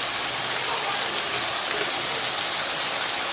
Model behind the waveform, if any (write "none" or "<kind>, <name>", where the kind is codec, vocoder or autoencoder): none